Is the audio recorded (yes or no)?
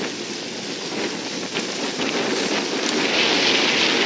yes